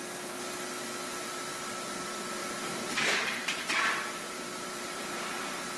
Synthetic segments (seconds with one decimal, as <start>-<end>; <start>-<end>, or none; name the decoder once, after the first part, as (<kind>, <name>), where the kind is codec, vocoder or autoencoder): 2.4-5.8 (vocoder, BigVGAN v2)